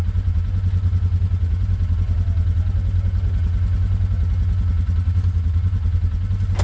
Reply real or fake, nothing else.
real